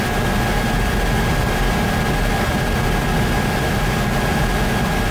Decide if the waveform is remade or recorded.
recorded